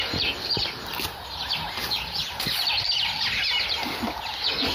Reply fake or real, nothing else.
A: real